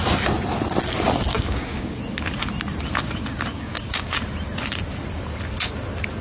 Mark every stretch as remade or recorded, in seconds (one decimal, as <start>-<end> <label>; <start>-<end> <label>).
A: 0.0-1.3 recorded; 1.3-2.0 remade; 2.0-3.5 recorded; 3.5-4.2 remade; 4.2-6.2 recorded